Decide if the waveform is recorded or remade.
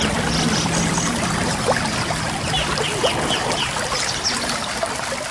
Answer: recorded